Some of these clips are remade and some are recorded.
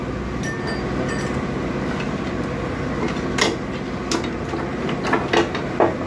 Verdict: recorded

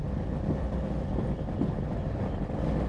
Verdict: recorded